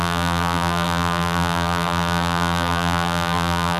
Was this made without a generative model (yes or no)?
no